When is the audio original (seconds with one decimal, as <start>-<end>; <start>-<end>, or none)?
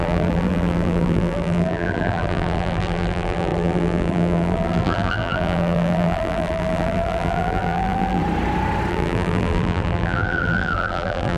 8.2-8.9